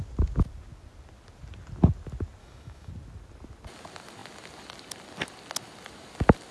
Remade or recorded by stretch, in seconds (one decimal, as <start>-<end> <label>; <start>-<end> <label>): 0.0-2.4 recorded; 2.4-2.9 remade; 2.9-6.5 recorded